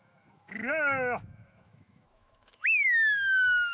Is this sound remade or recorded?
remade